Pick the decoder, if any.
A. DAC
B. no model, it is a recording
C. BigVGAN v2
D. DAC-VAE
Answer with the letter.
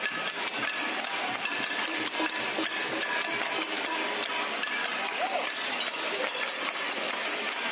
C